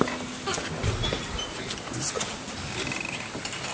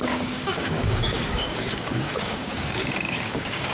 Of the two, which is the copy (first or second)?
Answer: second